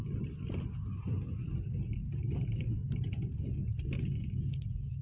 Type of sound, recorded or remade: recorded